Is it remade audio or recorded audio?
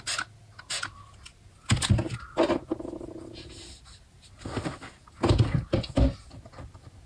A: recorded